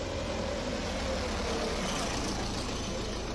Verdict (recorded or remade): recorded